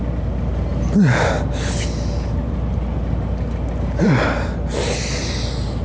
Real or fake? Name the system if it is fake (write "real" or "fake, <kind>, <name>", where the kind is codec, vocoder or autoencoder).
real